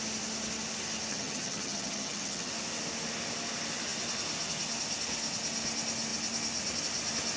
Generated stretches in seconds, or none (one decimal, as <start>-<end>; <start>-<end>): 1.1-2.5